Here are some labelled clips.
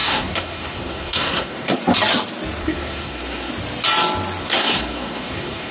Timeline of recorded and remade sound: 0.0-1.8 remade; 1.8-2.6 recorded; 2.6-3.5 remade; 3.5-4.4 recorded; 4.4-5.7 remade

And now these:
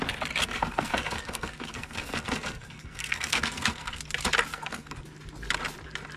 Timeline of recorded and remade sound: 0.0-0.4 recorded; 0.4-4.0 remade; 4.0-4.5 recorded; 4.5-5.0 remade; 5.0-6.2 recorded

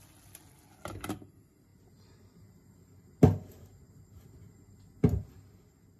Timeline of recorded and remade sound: 0.0-6.0 recorded